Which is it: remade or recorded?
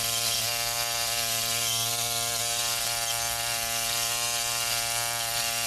recorded